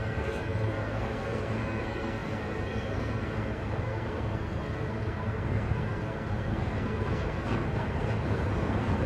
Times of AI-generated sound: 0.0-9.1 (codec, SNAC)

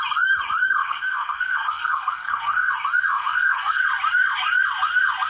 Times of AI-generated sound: 0.8-2.7 (codec, SNAC); 3.1-3.8

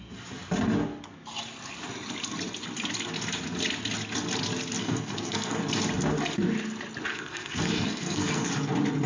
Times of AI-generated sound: 4.8-5.6 (codec, SNAC); 7.1-8.5

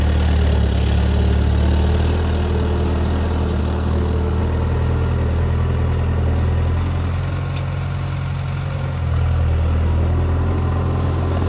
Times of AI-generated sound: 3.6-4.4 (codec, SNAC)

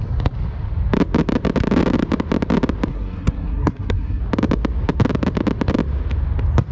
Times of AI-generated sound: 2.9-4.2 (codec, SNAC)

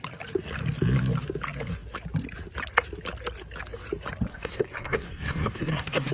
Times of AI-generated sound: 4.3-6.1 (codec, SNAC)

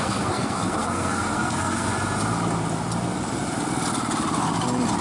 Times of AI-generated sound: 0.0-1.9 (codec, SNAC)

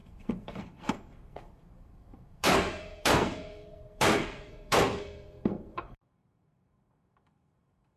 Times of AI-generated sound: 0.0-8.0 (codec, SNAC)